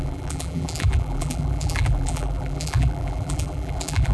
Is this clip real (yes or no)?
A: no